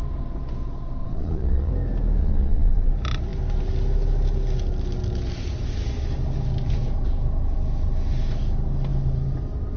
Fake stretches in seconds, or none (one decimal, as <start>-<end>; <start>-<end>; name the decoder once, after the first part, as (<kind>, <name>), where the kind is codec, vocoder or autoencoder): 1.0-1.7 (vocoder, Vocos); 2.2-2.9

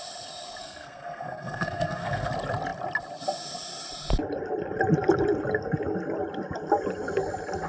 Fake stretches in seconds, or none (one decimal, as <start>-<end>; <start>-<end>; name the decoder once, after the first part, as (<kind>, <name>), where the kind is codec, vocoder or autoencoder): 0.6-2.3 (codec, SNAC)

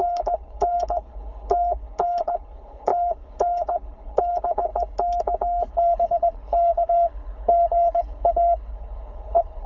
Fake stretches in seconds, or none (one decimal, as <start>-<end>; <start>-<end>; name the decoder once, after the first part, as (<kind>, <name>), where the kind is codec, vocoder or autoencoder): 0.0-4.7 (codec, HILCodec); 5.7-9.7

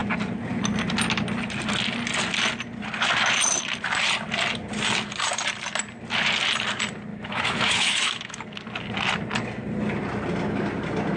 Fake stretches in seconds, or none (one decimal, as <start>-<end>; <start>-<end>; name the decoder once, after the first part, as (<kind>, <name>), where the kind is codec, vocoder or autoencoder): 7.1-8.4 (autoencoder, DAC-VAE)

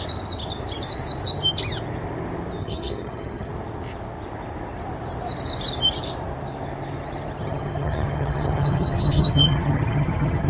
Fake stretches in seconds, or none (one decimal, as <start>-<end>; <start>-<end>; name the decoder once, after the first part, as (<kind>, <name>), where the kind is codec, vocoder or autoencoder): 2.6-3.5 (vocoder, HiFi-GAN); 7.4-10.5

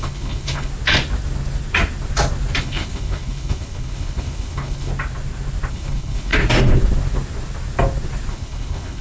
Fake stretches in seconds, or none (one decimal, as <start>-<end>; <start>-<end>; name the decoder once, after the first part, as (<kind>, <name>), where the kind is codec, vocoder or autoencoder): 0.0-0.7 (codec, HILCodec); 2.6-4.9; 5.7-6.3; 8.3-9.0